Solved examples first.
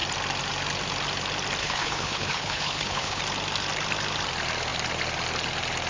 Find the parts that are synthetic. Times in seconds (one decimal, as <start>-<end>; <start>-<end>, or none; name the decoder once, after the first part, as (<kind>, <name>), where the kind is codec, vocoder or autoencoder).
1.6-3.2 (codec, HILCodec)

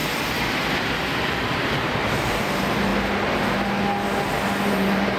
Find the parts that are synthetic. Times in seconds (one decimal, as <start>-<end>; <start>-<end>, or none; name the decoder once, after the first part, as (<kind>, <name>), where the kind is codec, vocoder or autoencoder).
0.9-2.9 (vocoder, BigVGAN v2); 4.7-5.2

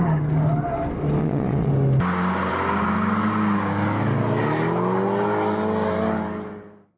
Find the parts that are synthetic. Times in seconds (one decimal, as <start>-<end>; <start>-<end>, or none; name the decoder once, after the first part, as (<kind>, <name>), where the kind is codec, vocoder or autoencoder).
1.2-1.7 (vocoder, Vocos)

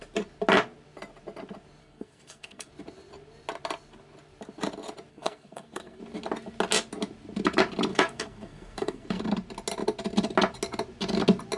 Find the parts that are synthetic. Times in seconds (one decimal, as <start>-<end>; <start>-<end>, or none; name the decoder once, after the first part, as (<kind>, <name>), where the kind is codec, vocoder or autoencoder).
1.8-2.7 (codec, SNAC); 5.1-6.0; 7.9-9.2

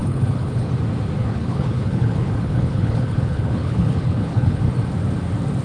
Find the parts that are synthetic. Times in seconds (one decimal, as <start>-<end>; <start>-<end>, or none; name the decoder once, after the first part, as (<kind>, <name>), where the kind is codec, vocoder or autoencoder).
0.0-0.7 (codec, HILCodec); 1.2-4.6

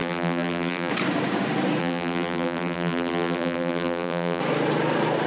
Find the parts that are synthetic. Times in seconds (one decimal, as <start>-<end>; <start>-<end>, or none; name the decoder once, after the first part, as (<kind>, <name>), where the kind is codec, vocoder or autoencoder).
0.0-0.9 (vocoder, BigVGAN v2); 1.8-4.4

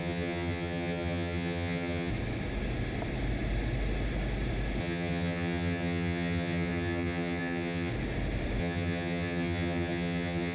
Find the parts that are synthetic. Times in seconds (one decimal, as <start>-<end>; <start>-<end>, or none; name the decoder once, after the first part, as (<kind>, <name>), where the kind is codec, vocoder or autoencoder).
0.0-2.1 (vocoder, HiFi-GAN); 4.8-7.9; 8.6-10.5

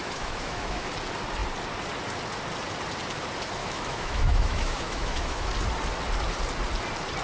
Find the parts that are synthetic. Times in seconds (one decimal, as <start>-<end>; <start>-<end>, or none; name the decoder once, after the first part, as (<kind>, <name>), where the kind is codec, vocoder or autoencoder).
0.0-0.9 (autoencoder, DAC-VAE); 3.6-5.5